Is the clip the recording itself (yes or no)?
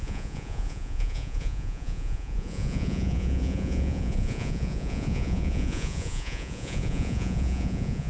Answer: no